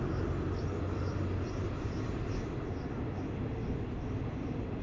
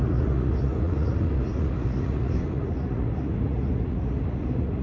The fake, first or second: second